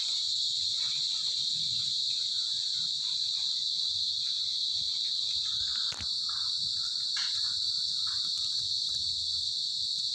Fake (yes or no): no